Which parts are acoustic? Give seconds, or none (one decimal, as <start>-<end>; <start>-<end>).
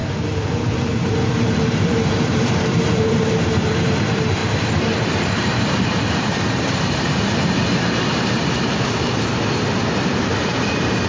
none